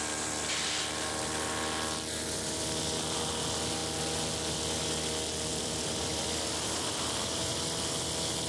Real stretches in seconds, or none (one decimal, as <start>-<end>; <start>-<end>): 0.0-5.5; 7.5-8.5